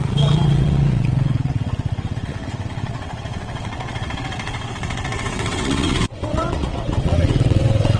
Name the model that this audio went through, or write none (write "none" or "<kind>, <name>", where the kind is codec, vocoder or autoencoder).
vocoder, WaveNeXt